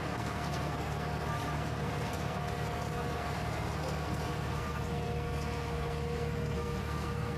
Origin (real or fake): fake